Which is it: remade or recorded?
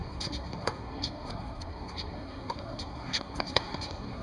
remade